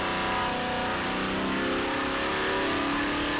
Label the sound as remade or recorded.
recorded